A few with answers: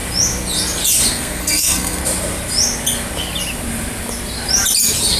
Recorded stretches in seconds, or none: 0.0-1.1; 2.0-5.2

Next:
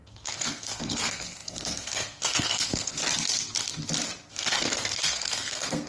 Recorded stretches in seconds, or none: 3.0-4.3

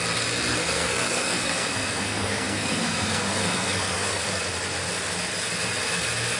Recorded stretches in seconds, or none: 0.0-0.6; 4.4-6.4

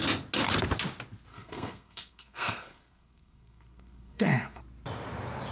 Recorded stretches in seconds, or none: 0.0-1.3; 4.6-5.5

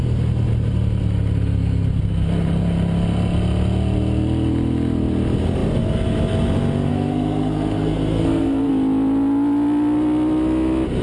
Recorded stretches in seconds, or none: 0.0-6.9; 8.7-11.0

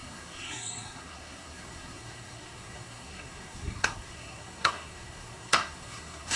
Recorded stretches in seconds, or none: none

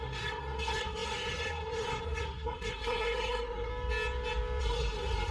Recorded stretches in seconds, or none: 3.7-4.6

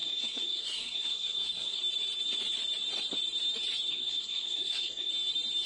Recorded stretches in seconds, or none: 1.8-3.9; 5.1-5.7